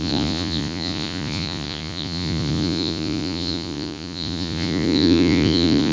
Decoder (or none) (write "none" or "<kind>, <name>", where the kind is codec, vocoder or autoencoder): vocoder, Vocos